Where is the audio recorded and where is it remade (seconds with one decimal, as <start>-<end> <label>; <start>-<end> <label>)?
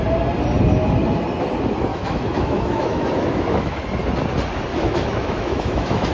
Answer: 0.0-1.9 recorded; 1.9-3.8 remade; 3.8-4.7 recorded; 4.7-6.1 remade